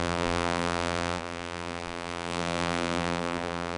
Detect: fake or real fake